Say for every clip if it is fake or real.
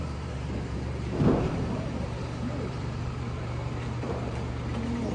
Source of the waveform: fake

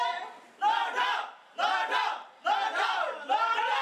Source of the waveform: real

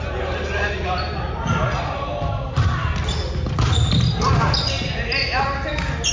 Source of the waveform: real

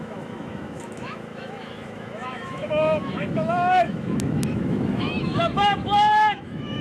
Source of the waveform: fake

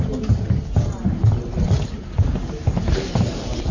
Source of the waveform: real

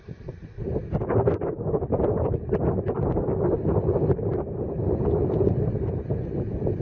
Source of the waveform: real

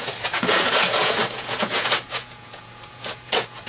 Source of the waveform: fake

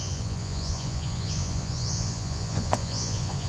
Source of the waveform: fake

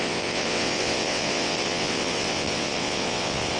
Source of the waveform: fake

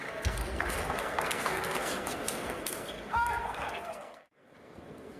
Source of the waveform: fake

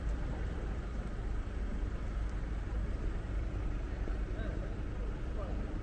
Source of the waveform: fake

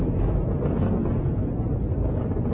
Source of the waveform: real